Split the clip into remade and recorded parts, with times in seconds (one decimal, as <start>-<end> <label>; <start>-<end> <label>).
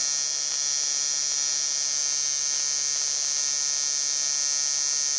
0.0-5.2 recorded